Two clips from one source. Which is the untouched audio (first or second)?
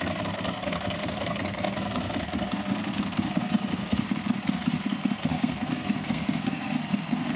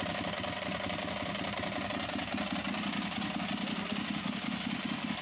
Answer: second